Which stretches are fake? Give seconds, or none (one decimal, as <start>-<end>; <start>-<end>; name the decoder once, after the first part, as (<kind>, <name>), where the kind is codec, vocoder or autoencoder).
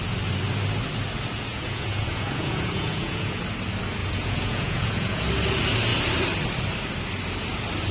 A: 1.5-3.4 (vocoder, Vocos); 4.0-5.2